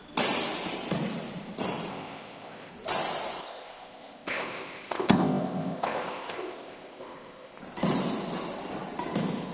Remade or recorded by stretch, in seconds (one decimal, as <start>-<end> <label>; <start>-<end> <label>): 0.0-1.9 recorded; 1.9-2.7 remade; 2.7-3.4 recorded; 3.4-7.6 remade; 7.6-9.5 recorded